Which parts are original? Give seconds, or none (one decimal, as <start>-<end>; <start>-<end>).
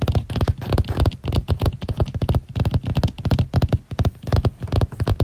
0.0-1.4; 2.0-5.2